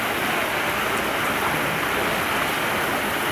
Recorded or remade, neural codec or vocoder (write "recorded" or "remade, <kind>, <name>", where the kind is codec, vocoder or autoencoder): recorded